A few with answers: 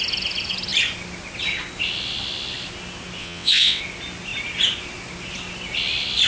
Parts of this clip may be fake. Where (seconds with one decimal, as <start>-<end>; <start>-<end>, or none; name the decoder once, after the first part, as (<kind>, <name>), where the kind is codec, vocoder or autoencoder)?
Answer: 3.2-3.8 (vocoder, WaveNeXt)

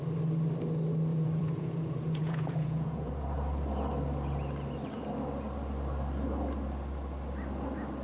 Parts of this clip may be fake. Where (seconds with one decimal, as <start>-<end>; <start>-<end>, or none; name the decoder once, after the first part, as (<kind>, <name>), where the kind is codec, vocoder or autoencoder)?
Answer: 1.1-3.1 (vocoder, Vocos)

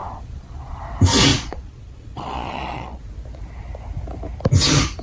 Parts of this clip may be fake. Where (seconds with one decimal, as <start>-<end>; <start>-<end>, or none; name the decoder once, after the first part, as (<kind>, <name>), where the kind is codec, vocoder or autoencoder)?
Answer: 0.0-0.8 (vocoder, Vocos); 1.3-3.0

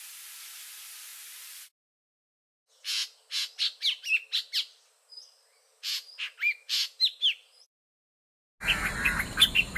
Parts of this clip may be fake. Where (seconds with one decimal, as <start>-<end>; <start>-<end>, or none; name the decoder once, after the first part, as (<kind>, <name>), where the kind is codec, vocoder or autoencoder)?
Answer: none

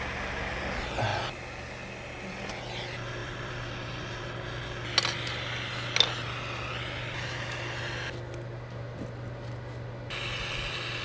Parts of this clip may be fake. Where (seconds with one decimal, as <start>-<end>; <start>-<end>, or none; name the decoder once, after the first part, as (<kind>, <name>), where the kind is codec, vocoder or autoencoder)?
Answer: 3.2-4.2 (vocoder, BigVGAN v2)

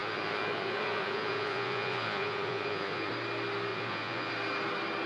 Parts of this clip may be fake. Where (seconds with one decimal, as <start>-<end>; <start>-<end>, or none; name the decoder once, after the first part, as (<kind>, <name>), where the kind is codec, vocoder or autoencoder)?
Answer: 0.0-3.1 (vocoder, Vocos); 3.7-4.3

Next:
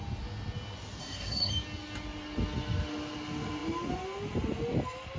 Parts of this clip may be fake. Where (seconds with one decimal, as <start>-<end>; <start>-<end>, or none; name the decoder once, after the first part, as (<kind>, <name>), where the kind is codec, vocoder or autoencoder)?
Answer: 1.0-1.5 (codec, SNAC)

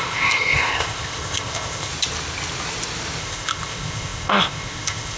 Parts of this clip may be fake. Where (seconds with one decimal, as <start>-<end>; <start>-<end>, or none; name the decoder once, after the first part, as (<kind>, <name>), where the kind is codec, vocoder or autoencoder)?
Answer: 0.0-1.9 (codec, ZipCodec); 3.2-5.2